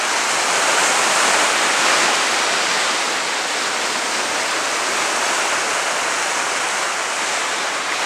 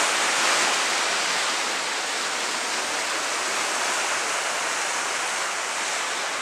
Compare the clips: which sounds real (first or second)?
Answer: second